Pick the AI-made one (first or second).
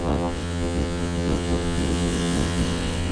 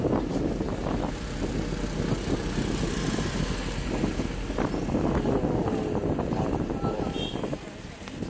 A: first